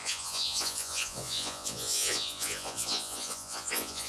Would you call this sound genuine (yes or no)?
no